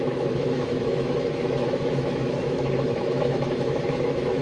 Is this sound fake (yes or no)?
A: yes